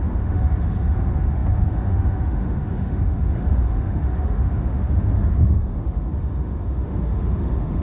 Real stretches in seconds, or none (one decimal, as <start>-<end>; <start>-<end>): none